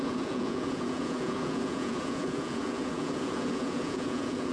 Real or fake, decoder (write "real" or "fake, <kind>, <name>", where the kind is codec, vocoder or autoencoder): fake, vocoder, Vocos